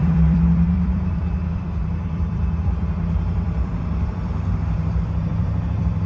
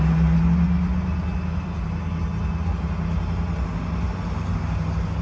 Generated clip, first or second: first